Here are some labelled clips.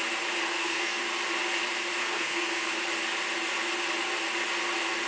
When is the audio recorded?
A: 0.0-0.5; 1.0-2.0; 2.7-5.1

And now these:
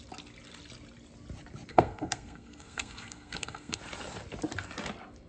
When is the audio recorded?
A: 0.0-1.7; 3.8-5.3

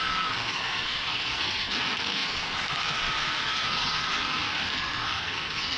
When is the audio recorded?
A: none

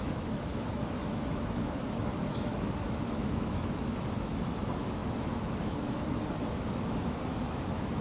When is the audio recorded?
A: none

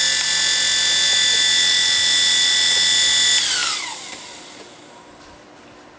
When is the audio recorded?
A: 0.0-6.0

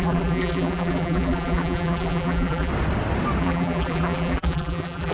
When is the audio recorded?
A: 2.7-3.4

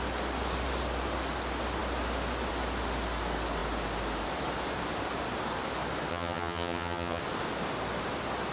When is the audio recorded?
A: 0.0-6.1; 7.2-8.5